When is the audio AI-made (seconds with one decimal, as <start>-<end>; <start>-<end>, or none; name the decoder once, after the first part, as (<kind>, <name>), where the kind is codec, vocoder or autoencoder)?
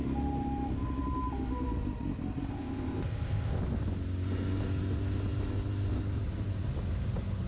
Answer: 2.5-3.6 (codec, ZipCodec)